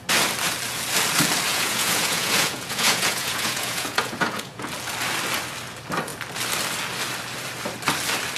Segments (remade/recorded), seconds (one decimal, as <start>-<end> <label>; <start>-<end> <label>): 0.0-1.5 recorded; 1.5-4.7 remade; 4.7-8.4 recorded